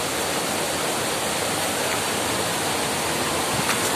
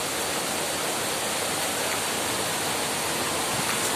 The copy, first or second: first